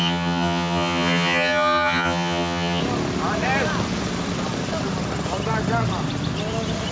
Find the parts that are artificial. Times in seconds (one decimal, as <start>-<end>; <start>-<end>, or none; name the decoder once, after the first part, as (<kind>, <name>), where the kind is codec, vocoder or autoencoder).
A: 0.0-2.8 (vocoder, HiFi-GAN)